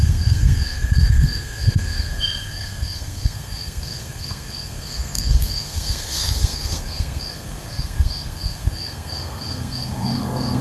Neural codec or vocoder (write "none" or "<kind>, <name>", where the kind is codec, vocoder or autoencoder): codec, SNAC